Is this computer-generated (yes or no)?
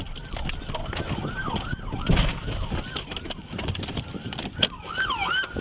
no